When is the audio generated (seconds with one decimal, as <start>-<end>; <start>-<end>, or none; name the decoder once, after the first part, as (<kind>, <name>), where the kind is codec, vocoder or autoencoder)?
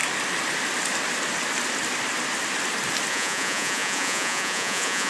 3.1-5.1 (vocoder, Vocos)